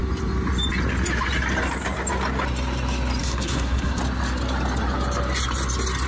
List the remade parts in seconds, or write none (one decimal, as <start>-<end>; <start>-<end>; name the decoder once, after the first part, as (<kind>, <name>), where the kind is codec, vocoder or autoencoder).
3.2-4.0 (codec, SNAC)